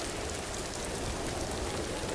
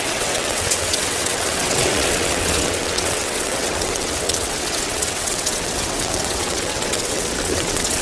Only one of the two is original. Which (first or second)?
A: first